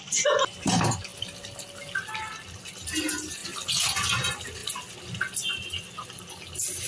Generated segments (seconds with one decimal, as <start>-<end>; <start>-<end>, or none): none